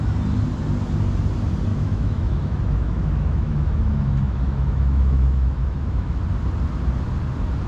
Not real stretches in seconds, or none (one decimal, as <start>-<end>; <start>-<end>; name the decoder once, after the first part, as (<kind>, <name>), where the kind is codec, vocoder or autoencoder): 1.7-6.2 (autoencoder, DAC-VAE)